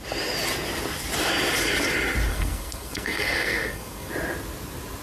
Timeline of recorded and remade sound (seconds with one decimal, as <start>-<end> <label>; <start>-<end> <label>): 0.0-2.3 recorded; 2.3-4.1 remade; 4.1-5.0 recorded